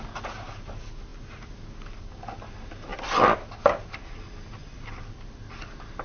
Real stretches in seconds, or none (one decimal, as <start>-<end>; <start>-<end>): 0.0-2.9; 4.5-6.0